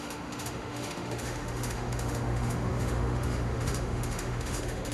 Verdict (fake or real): fake